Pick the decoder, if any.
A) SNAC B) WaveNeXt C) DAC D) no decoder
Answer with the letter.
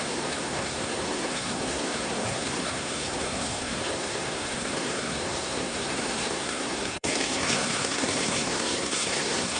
A